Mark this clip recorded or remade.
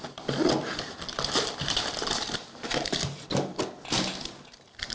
remade